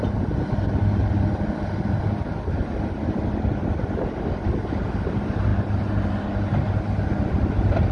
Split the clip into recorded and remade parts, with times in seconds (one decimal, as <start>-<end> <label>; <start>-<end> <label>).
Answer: 0.0-7.9 recorded